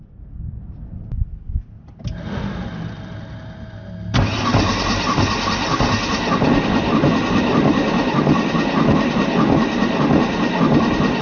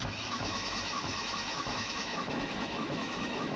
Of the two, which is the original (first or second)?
first